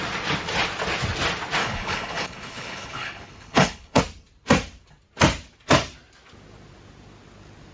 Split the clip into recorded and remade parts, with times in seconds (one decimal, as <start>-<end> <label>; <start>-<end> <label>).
0.0-1.6 recorded; 1.6-4.0 remade; 4.0-7.7 recorded